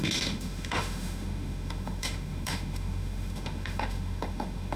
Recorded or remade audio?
remade